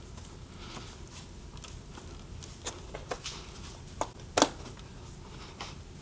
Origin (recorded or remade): recorded